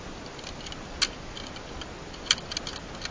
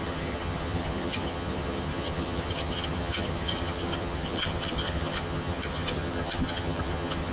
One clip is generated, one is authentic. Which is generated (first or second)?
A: second